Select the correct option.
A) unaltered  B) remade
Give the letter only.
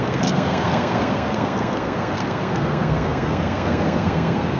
B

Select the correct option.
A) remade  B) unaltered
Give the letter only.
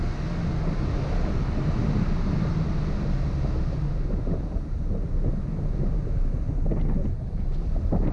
B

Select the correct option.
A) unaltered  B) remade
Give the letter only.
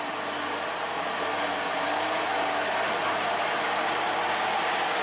A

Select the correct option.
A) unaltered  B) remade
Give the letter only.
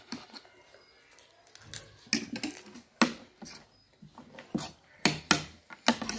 A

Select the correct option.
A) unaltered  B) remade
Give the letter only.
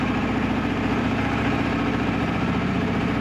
B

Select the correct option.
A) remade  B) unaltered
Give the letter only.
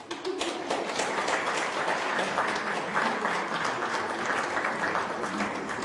B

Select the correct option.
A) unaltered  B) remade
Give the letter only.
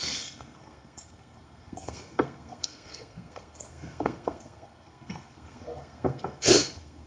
B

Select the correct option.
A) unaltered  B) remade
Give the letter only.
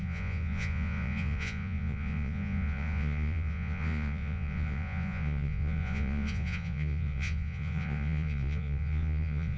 B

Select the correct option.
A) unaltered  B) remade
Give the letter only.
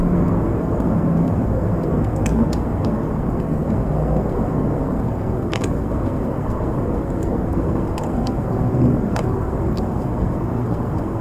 B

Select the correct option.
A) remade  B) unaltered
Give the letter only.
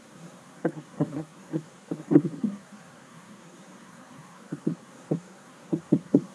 A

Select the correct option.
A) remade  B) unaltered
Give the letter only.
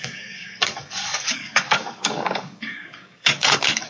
A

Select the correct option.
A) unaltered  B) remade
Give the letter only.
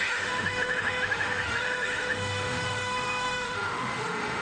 B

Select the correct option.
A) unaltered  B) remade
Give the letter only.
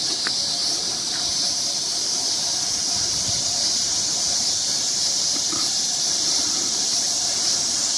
B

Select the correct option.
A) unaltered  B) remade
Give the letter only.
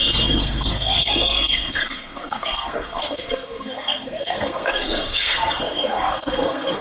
B